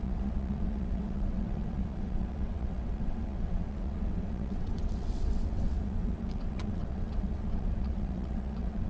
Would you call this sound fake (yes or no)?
yes